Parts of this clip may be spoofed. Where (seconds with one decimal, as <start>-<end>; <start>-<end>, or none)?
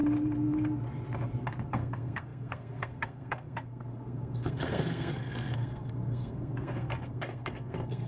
1.7-8.1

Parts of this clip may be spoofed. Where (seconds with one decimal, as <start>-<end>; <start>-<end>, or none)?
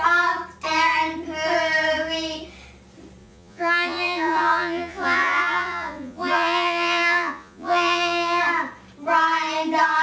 3.2-8.4